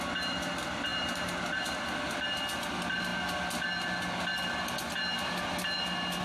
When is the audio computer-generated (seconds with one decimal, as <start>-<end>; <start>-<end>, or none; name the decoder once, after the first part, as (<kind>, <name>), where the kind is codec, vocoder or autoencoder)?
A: none